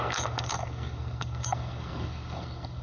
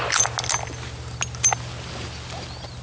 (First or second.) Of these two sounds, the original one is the second